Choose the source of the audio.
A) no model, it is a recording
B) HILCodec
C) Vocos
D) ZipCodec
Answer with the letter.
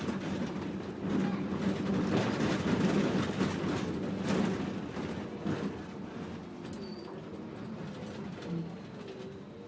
A